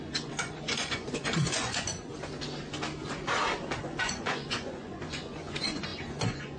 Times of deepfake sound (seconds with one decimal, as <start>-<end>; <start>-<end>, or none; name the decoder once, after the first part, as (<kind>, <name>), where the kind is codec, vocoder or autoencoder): 0.0-2.1 (vocoder, Vocos); 3.8-6.6